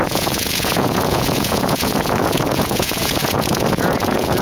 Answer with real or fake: fake